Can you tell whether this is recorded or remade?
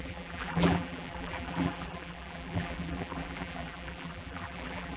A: remade